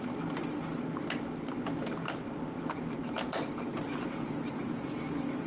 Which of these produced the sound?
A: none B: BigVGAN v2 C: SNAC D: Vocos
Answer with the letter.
A